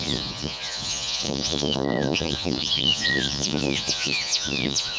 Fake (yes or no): yes